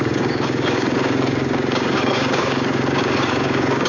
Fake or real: fake